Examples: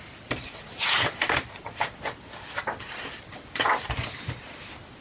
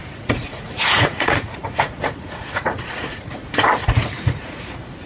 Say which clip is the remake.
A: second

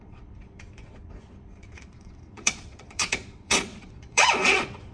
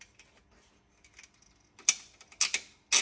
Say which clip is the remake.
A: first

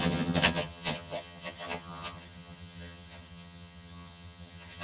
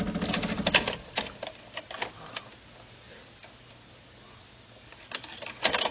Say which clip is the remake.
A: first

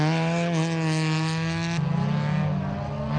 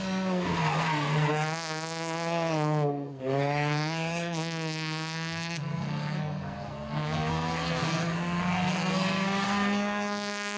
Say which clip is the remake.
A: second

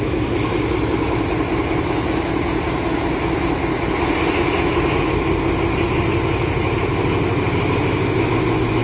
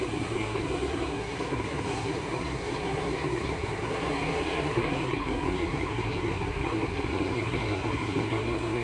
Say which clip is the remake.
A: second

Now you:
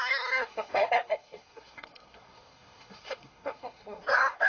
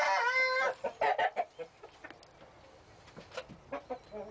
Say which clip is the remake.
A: first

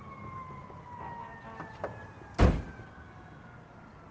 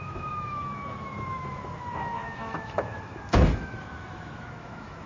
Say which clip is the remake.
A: second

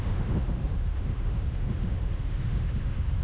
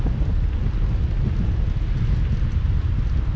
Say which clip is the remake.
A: first